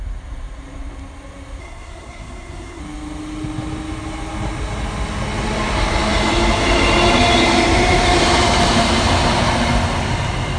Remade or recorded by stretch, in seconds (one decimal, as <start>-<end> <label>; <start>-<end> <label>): 0.0-1.6 recorded; 1.6-2.8 remade; 2.8-10.6 recorded